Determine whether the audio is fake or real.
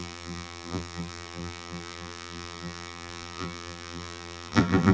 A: fake